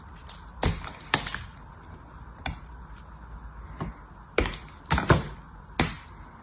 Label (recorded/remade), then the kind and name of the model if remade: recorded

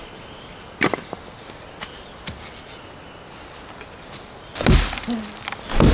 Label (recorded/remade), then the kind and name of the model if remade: recorded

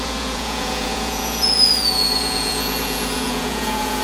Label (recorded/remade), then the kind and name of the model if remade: remade, vocoder, Vocos